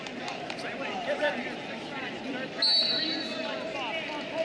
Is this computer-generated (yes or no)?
no